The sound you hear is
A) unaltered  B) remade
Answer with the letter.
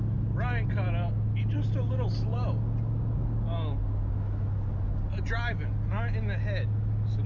A